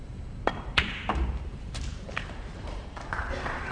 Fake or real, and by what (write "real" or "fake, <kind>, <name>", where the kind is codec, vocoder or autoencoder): fake, vocoder, BigVGAN v2